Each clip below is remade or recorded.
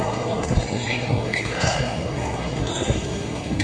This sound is remade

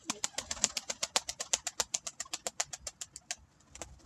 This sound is recorded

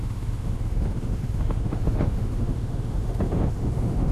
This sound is remade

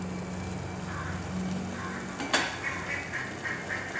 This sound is recorded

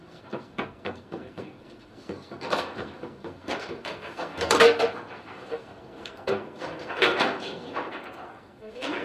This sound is remade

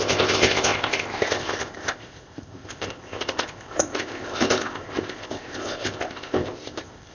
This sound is remade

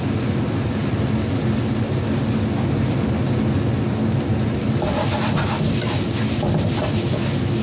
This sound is recorded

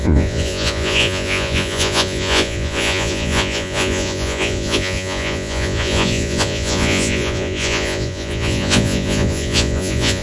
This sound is remade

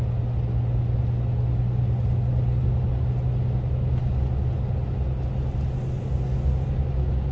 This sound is recorded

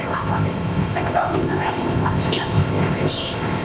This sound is remade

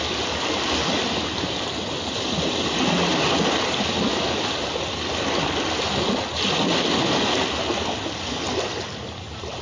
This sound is recorded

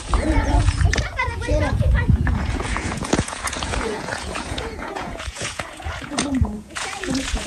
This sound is remade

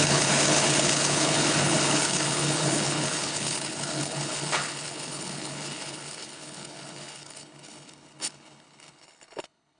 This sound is remade